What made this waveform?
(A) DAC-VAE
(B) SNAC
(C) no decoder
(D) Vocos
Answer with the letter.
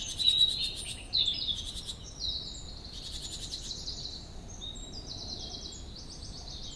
C